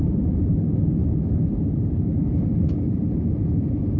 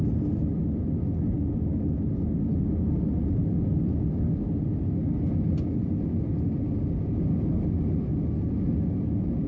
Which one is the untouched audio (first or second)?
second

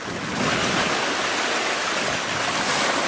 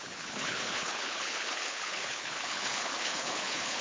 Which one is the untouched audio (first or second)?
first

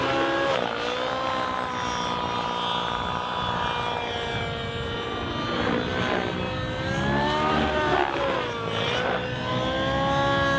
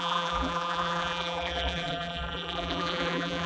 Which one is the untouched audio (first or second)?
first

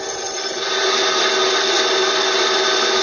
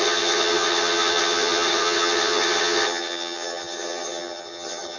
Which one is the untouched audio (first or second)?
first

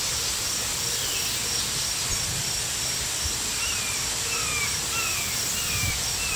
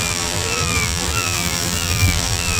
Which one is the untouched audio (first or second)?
first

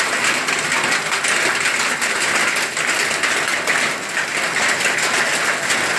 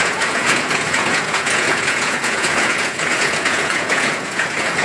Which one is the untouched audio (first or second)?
first